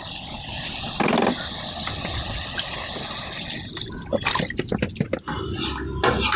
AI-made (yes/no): no